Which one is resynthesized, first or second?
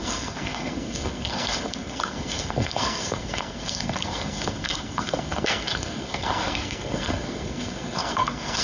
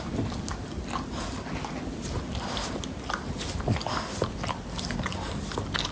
first